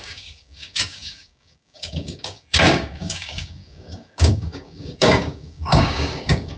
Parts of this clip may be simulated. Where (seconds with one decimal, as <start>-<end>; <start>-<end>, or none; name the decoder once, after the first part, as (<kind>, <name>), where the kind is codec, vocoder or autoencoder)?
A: 0.0-6.6 (codec, DAC)